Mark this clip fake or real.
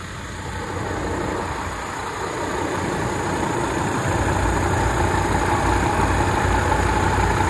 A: real